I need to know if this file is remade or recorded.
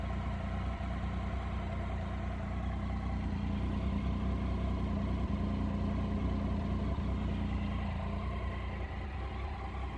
recorded